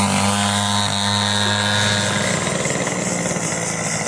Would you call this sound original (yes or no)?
yes